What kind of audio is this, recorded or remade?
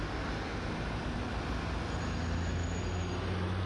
recorded